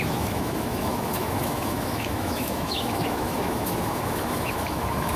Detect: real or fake fake